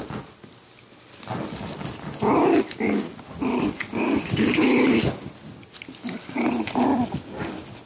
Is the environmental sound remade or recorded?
recorded